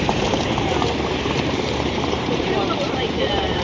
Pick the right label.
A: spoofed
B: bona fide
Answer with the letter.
A